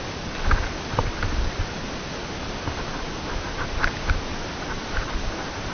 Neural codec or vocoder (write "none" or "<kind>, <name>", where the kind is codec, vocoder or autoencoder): none